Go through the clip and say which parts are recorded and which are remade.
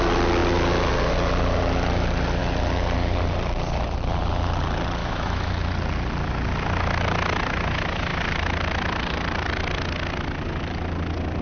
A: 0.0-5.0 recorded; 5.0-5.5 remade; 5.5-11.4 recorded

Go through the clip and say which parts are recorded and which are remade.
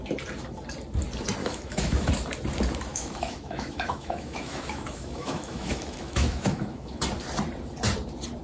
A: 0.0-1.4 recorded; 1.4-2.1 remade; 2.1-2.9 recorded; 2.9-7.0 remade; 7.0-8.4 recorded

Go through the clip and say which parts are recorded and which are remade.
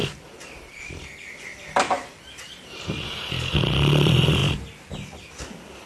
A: 0.0-5.9 recorded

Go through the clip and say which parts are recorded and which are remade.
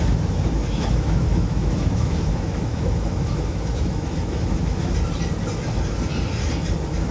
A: 0.0-0.6 recorded; 0.6-4.9 remade; 4.9-7.1 recorded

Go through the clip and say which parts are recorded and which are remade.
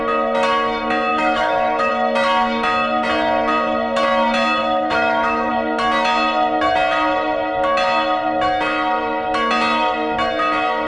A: 0.0-1.1 recorded; 1.1-1.9 remade; 1.9-4.6 recorded; 4.6-5.5 remade; 5.5-10.9 recorded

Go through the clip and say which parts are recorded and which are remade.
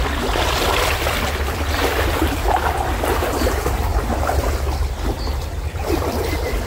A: 0.0-6.7 recorded